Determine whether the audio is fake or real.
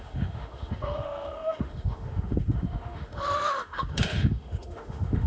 fake